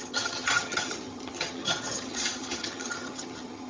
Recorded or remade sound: remade